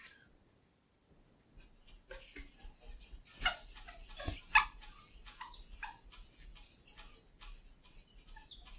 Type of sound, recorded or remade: recorded